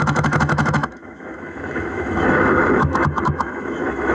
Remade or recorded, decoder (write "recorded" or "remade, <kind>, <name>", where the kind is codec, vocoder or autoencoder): remade, autoencoder, DAC-VAE